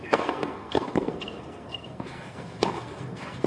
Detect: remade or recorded remade